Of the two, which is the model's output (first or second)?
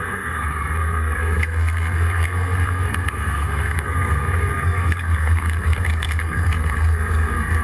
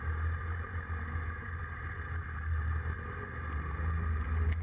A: first